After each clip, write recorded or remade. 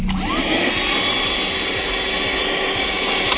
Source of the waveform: recorded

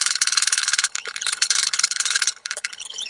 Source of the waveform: remade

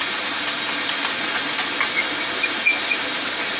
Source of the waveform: recorded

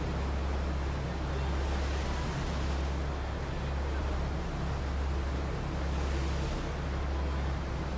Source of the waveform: recorded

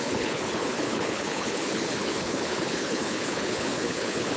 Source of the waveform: remade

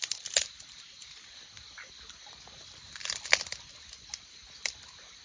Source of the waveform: recorded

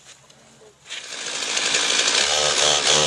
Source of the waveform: recorded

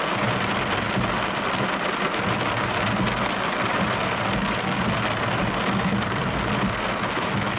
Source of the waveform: recorded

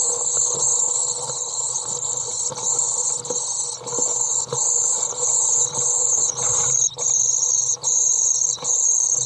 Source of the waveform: recorded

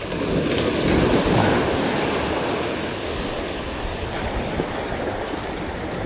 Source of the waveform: recorded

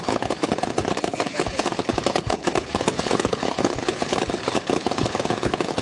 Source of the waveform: remade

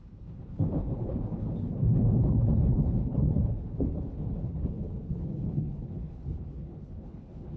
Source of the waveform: remade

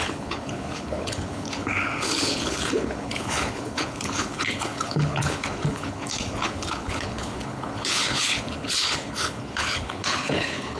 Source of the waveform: remade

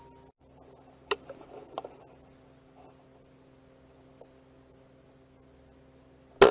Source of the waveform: recorded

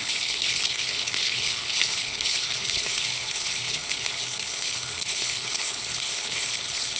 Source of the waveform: remade